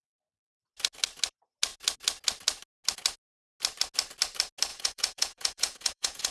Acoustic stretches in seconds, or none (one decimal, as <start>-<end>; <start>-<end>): 0.0-4.7